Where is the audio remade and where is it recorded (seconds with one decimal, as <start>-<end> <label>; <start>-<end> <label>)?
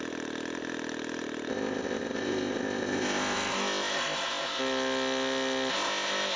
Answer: 0.0-1.5 recorded; 1.5-4.6 remade; 4.6-5.7 recorded; 5.7-6.4 remade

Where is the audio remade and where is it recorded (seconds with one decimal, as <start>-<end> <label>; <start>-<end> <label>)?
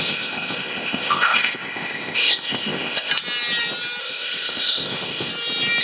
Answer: 0.0-3.1 remade; 3.1-4.0 recorded; 4.0-5.3 remade; 5.3-5.8 recorded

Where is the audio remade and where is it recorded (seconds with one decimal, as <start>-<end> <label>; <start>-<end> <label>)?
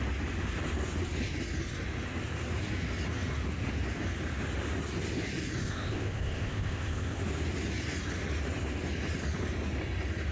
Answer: 0.0-5.6 recorded; 5.6-7.2 remade; 7.2-10.3 recorded